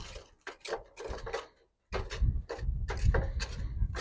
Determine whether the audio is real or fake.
real